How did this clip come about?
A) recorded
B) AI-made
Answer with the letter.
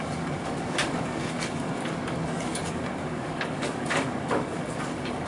B